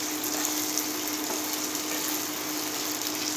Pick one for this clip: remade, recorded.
recorded